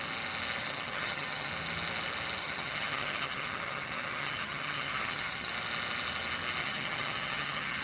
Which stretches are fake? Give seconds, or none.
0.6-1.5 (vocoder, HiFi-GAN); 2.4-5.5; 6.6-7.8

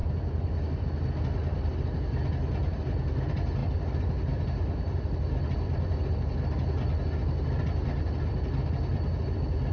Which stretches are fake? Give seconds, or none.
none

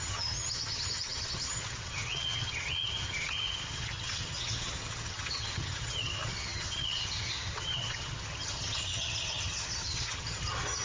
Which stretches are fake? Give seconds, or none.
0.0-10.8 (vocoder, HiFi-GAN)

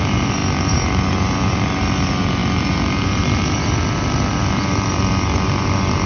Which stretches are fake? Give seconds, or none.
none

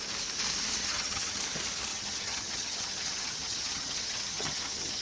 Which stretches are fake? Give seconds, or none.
0.8-1.4 (vocoder, HiFi-GAN); 1.9-5.0

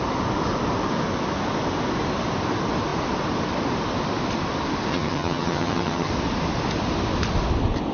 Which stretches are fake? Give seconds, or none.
4.9-6.1 (vocoder, HiFi-GAN)

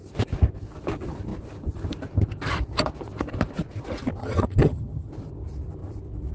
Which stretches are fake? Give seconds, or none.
4.2-5.1 (vocoder, HiFi-GAN)

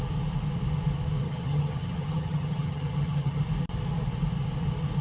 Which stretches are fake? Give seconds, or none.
1.2-3.4 (vocoder, HiFi-GAN)